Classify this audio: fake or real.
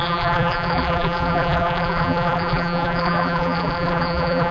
fake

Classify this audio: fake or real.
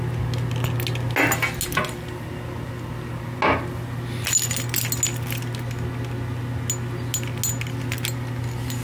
real